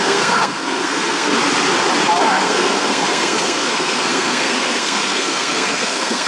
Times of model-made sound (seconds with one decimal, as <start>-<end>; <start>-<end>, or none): 0.0-1.3; 2.2-6.3